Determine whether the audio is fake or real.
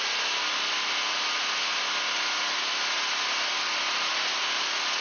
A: real